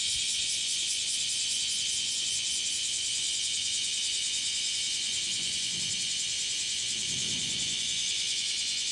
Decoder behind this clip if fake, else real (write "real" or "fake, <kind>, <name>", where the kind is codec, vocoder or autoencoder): fake, vocoder, Vocos